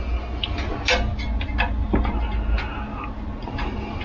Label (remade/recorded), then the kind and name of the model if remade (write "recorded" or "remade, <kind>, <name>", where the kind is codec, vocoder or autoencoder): recorded